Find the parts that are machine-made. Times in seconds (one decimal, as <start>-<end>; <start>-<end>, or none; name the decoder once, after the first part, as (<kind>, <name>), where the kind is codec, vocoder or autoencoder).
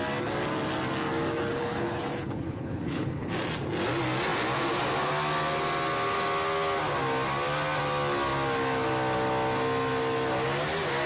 1.5-3.3 (codec, HILCodec)